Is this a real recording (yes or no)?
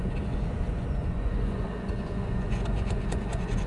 no